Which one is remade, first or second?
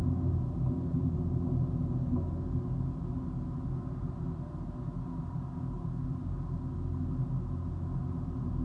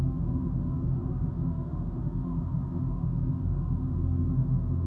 second